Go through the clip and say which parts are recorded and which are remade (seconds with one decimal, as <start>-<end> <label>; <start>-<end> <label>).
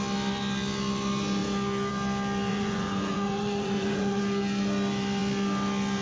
0.0-2.5 recorded; 2.5-4.2 remade; 4.2-6.0 recorded